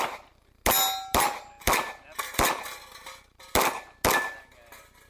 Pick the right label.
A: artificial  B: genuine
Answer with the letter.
B